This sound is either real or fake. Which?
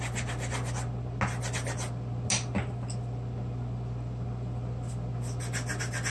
real